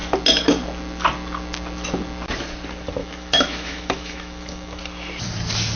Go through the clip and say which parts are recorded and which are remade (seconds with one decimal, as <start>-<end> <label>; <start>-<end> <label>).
0.0-3.0 recorded; 3.0-4.8 remade; 4.8-5.8 recorded